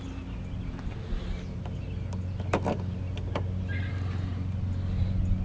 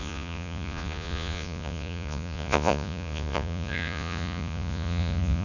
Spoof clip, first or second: second